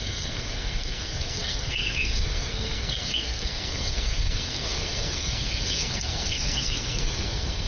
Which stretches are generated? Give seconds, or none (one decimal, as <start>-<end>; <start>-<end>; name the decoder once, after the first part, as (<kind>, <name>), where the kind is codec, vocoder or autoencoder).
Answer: 0.0-7.7 (codec, SNAC)